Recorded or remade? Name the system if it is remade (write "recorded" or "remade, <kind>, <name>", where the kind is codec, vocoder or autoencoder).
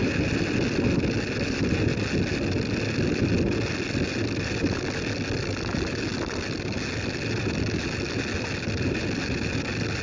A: recorded